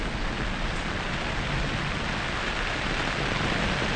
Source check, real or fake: real